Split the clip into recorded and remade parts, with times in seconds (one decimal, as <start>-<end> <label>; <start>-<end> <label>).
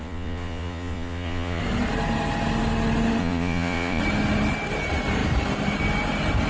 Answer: 0.0-1.6 remade; 1.6-3.2 recorded; 3.2-4.0 remade; 4.0-6.5 recorded